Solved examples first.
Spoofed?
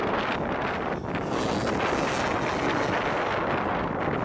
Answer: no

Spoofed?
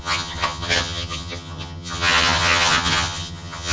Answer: yes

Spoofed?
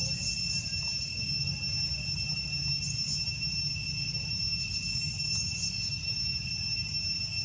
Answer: no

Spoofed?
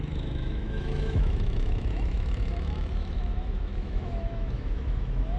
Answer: yes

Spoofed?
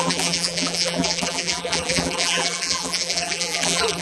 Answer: yes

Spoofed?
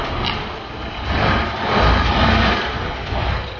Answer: no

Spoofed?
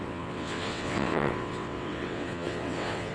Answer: yes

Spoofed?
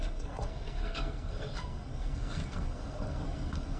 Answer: yes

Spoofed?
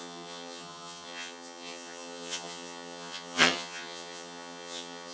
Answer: yes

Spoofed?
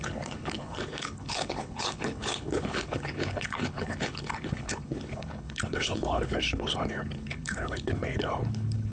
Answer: yes